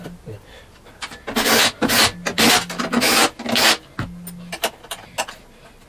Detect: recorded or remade recorded